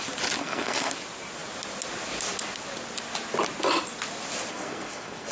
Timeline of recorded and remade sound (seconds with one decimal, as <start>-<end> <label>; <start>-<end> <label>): 0.0-0.4 recorded; 0.4-0.9 remade; 0.9-4.5 recorded; 4.5-5.3 remade